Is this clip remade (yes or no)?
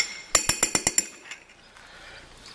no